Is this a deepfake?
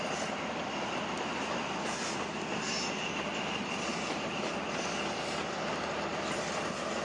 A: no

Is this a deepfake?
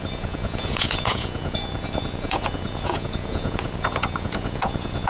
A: yes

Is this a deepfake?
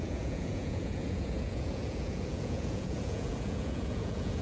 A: yes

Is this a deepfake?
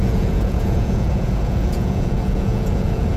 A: yes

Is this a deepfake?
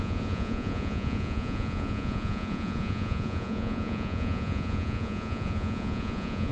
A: yes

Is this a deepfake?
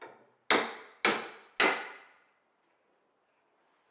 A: no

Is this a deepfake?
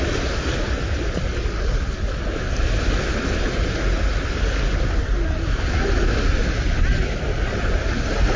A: no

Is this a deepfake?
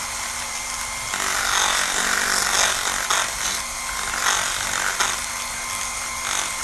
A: no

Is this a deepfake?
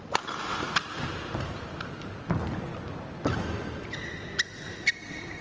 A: no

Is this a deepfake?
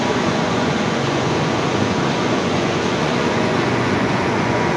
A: yes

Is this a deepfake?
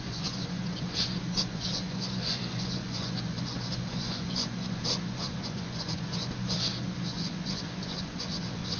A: yes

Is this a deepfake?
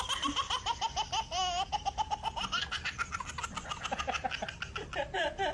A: no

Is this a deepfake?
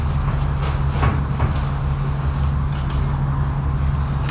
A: no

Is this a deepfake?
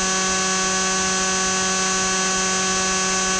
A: no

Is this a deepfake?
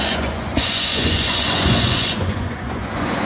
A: yes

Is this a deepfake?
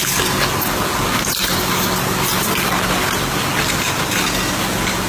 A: no